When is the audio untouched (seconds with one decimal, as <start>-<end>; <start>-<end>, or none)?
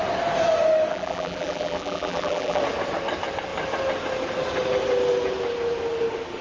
0.0-0.9; 2.6-6.4